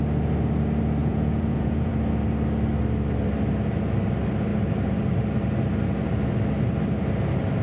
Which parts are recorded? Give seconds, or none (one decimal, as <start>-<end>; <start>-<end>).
0.0-1.0; 1.9-7.6